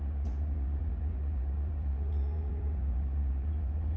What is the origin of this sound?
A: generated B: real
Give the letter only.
A